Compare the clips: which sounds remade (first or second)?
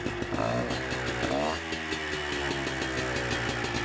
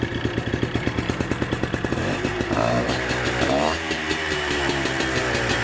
second